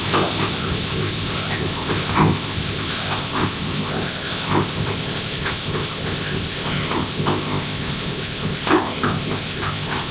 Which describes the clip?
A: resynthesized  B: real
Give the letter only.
A